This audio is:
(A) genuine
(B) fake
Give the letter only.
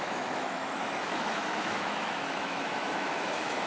B